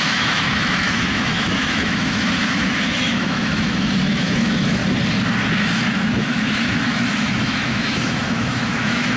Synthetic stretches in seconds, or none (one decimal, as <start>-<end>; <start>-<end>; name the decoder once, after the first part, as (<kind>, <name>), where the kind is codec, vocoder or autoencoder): 0.0-4.8 (autoencoder, DAC-VAE); 5.6-9.2